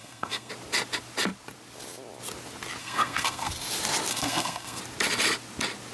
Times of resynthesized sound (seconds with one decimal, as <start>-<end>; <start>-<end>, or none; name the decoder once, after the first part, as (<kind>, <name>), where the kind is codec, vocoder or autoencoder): 0.0-0.5 (codec, SNAC); 2.8-3.5; 4.1-4.8